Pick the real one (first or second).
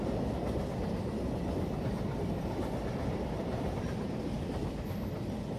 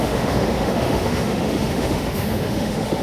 first